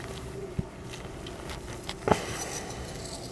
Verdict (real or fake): real